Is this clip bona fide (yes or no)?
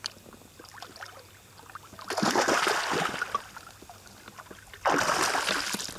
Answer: yes